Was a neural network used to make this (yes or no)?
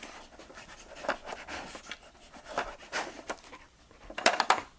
no